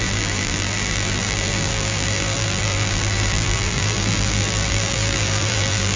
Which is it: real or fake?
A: fake